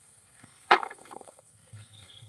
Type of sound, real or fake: fake